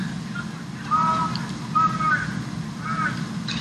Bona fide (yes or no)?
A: yes